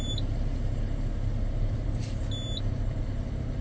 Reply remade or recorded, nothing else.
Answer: recorded